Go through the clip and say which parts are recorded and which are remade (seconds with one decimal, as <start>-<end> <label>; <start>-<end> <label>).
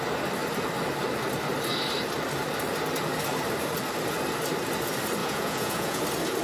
0.0-5.2 recorded; 5.2-6.0 remade; 6.0-6.4 recorded